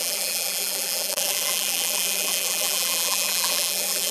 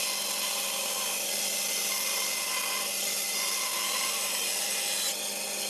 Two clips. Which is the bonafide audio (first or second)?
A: second